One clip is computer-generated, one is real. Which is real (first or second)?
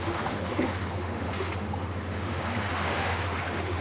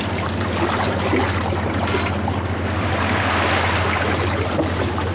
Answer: second